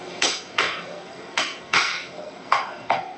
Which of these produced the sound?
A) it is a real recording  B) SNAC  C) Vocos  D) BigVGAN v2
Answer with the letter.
B